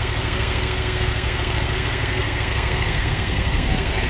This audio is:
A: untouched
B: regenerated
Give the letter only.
B